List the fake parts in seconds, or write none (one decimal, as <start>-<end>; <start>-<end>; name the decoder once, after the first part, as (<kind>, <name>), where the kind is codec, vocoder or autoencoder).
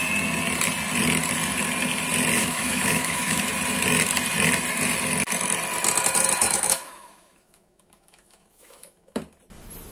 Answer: 2.4-3.5 (autoencoder, DAC-VAE); 6.4-9.2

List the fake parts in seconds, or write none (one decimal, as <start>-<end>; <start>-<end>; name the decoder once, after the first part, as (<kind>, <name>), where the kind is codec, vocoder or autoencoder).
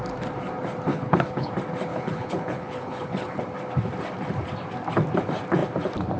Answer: 0.9-1.5 (codec, HILCodec); 1.9-3.4